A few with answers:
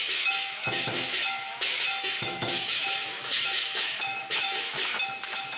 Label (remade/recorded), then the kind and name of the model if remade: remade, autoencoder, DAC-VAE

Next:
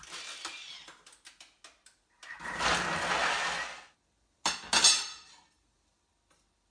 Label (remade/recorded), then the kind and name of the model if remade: recorded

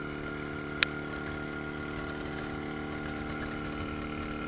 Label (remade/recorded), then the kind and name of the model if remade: recorded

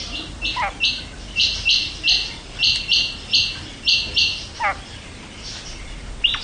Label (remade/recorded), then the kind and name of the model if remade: recorded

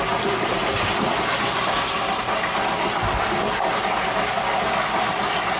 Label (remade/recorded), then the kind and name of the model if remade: recorded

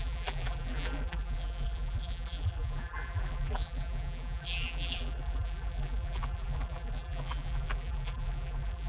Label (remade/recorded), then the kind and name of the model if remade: remade, vocoder, BigVGAN v2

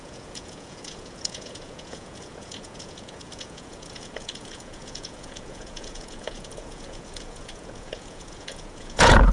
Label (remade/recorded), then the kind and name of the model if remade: remade, vocoder, Vocos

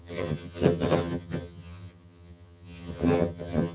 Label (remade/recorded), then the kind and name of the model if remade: remade, vocoder, HiFi-GAN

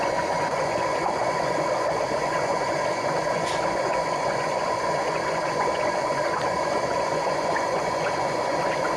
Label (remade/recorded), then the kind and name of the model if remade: remade, vocoder, Vocos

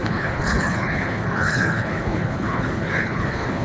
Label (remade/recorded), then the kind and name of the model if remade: remade, codec, HILCodec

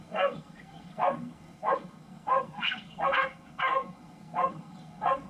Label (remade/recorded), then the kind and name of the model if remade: remade, codec, SNAC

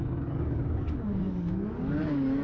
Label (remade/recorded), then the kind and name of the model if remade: remade, codec, DAC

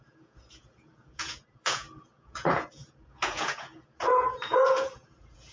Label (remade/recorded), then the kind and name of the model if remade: remade, vocoder, Vocos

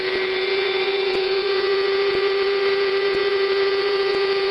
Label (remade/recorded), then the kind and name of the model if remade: remade, vocoder, Vocos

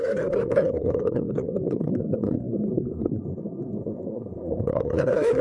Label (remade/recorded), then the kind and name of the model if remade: remade, codec, SNAC